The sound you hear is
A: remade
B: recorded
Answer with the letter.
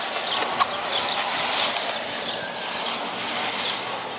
B